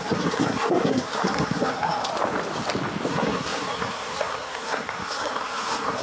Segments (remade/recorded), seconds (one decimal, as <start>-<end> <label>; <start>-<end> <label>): 0.0-2.1 remade; 2.1-3.1 recorded; 3.1-6.0 remade